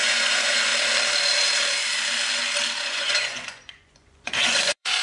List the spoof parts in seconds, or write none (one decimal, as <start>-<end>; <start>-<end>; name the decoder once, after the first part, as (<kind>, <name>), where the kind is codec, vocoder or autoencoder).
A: 0.0-0.7 (vocoder, Vocos); 2.8-5.0